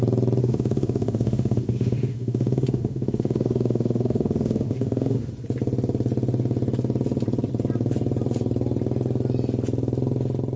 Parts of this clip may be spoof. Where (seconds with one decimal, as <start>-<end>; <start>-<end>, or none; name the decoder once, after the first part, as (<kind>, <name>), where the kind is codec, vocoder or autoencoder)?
0.4-5.3 (autoencoder, DAC-VAE)